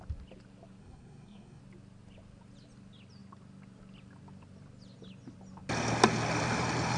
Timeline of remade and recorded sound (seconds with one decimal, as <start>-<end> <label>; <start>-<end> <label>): 0.0-0.8 recorded; 0.8-1.6 remade; 1.6-7.0 recorded

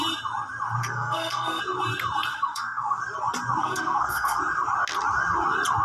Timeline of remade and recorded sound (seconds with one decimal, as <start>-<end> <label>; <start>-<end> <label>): 0.0-0.8 recorded; 0.8-1.6 remade; 1.6-2.3 recorded; 2.3-3.0 remade; 3.0-3.6 recorded; 3.6-4.4 remade; 4.4-5.8 recorded

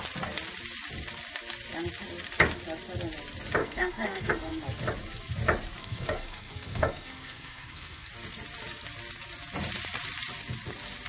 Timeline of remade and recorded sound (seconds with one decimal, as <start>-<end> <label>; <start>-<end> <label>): 0.0-3.6 recorded; 3.6-4.6 remade; 4.6-5.8 recorded; 5.8-8.1 remade; 8.1-11.1 recorded

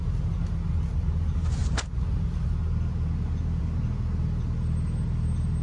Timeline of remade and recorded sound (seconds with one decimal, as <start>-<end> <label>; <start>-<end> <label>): 0.0-5.6 recorded

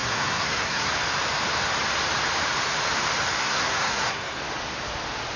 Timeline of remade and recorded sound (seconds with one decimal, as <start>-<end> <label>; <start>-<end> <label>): 0.0-0.9 remade; 0.9-3.4 recorded; 3.4-4.4 remade; 4.4-5.4 recorded